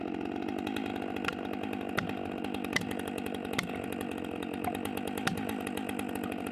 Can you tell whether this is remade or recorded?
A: recorded